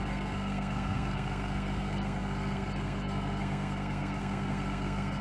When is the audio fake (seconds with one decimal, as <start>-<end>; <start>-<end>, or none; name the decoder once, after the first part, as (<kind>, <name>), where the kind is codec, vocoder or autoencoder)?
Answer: 0.0-5.2 (codec, SNAC)